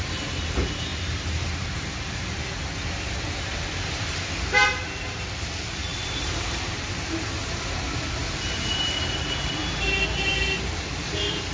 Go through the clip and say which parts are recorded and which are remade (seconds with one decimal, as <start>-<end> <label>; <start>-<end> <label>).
0.0-0.9 recorded; 0.9-2.4 remade; 2.4-5.9 recorded; 5.9-7.7 remade; 7.7-8.2 recorded; 8.2-9.0 remade; 9.0-11.5 recorded